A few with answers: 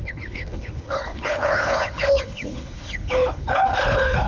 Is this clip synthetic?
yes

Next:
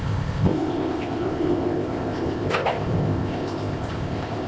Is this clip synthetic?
yes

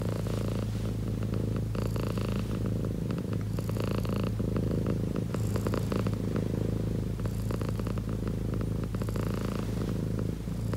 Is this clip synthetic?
no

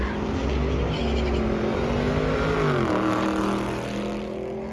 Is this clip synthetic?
no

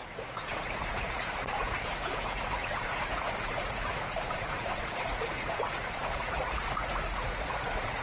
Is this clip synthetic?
yes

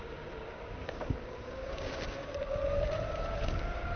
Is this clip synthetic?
yes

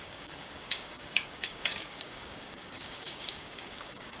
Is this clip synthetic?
yes